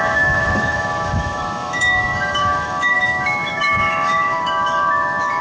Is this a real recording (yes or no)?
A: no